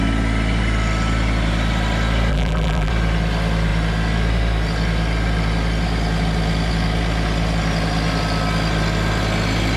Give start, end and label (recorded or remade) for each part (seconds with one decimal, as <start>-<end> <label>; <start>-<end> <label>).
0.0-2.3 recorded; 2.3-2.9 remade; 2.9-9.8 recorded